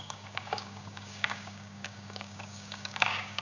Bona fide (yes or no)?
no